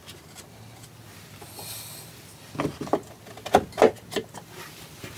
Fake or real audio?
real